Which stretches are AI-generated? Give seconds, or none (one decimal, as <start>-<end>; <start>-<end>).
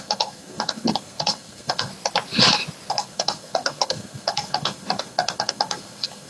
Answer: 0.0-1.9; 2.9-6.3